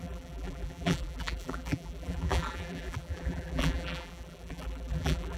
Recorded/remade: remade